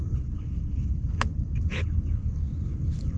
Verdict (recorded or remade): remade